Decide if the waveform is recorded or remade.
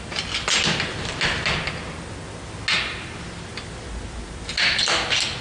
recorded